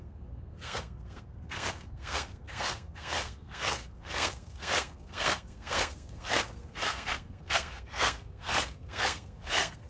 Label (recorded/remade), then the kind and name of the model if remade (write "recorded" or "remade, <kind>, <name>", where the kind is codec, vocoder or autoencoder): remade, codec, SNAC